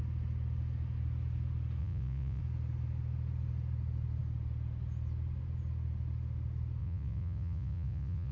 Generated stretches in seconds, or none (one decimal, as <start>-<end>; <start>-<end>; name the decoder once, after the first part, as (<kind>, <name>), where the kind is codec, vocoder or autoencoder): 1.8-2.4 (vocoder, Vocos); 6.8-8.3